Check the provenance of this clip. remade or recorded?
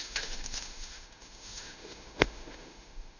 remade